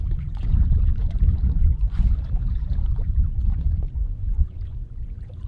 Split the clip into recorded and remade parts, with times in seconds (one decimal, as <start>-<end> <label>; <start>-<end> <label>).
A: 0.0-5.5 remade